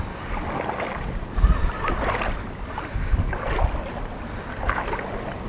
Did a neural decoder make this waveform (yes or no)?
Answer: no